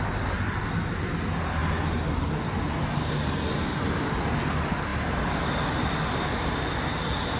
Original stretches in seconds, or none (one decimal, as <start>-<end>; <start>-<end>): 0.0-7.4